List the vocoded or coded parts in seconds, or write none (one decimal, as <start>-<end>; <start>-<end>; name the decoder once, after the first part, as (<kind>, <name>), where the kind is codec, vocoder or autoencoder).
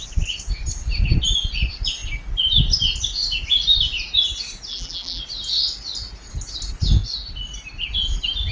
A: 4.7-5.2 (vocoder, BigVGAN v2)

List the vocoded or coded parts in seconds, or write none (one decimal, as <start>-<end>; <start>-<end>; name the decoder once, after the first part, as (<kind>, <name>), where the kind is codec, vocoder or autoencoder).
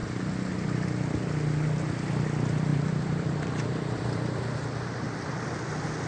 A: 2.7-5.5 (vocoder, BigVGAN v2)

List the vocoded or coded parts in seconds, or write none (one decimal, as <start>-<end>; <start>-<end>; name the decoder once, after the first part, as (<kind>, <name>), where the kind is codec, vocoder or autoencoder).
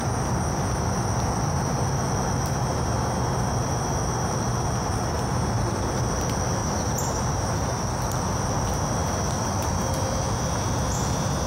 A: 6.6-7.2 (vocoder, BigVGAN v2)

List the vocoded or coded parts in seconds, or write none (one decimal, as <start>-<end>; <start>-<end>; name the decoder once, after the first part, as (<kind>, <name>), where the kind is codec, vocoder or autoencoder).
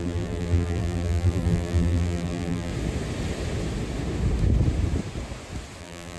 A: 0.0-2.7 (vocoder, BigVGAN v2); 5.8-6.2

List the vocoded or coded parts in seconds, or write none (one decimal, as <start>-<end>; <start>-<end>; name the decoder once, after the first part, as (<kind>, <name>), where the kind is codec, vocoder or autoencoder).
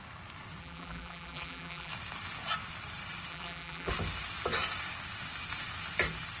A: 0.6-1.9 (vocoder, BigVGAN v2); 3.3-3.9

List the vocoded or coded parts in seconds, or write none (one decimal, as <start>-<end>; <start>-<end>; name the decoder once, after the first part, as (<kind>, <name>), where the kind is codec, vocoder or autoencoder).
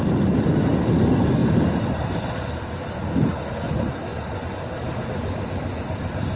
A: none